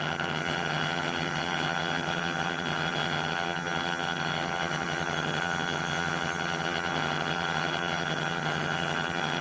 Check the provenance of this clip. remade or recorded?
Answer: remade